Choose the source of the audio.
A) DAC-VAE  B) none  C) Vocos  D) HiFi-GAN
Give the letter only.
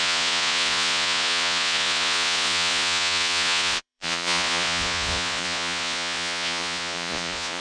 C